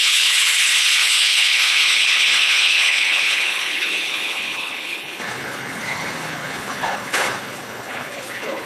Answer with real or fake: fake